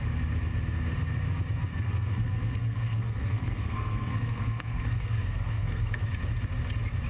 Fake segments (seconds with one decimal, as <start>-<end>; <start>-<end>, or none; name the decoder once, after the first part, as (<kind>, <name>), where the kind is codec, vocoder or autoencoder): 1.7-6.0 (codec, SNAC)